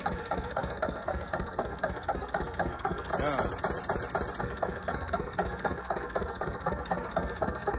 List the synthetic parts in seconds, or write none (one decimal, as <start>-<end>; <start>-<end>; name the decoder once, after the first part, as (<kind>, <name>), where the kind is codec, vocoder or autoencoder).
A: 0.0-3.1 (codec, SNAC); 4.4-7.8